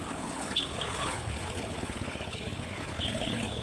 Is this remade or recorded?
remade